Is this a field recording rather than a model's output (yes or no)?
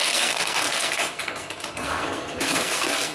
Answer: no